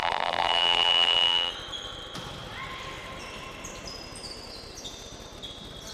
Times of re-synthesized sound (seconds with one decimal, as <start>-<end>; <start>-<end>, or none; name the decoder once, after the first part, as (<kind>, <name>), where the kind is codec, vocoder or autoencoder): 0.0-1.5 (vocoder, BigVGAN v2)